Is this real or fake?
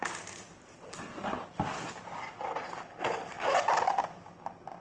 real